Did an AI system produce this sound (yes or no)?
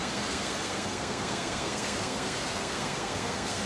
yes